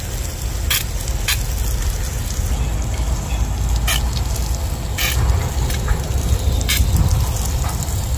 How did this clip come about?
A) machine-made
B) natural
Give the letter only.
B